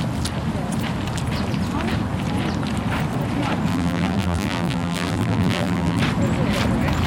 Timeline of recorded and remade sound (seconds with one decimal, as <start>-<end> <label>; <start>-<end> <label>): 0.0-3.7 recorded; 3.7-6.0 remade; 6.0-7.1 recorded